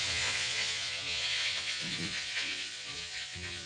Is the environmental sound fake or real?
fake